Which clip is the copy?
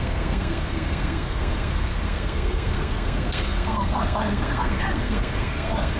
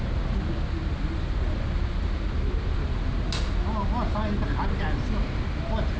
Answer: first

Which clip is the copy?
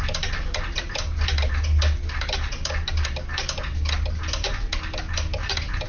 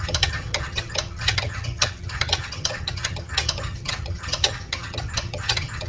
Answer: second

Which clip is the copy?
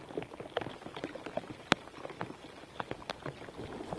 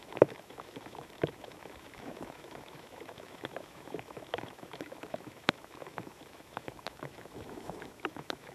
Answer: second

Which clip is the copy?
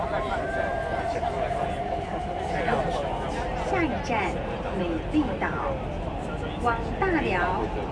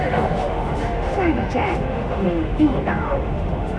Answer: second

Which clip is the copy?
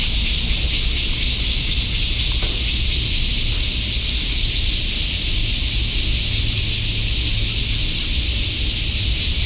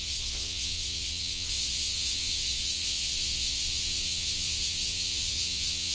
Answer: second